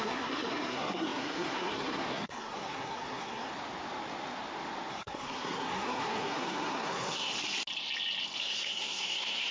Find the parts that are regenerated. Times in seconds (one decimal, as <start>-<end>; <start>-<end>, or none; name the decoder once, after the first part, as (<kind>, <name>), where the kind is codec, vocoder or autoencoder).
0.0-3.5 (codec, SNAC); 4.9-7.3; 8.4-9.5